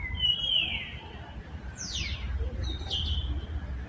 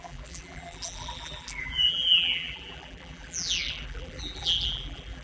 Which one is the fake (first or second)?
second